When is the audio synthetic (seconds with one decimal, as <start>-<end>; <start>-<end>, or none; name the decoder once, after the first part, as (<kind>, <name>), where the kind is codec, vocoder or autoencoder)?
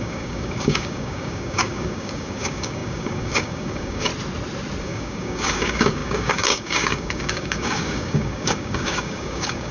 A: 0.0-4.1 (codec, DAC); 4.8-9.7